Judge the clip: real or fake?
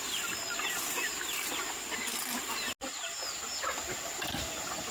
real